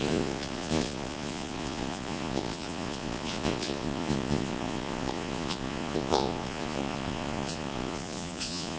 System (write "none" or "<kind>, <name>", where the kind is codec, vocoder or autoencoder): vocoder, Vocos